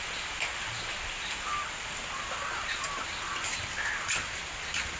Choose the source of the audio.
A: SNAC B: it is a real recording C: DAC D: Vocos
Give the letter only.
B